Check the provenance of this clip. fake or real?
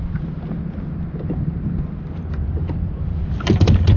real